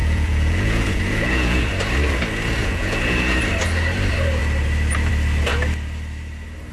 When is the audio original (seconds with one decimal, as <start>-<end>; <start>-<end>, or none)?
1.6-2.6; 3.4-6.7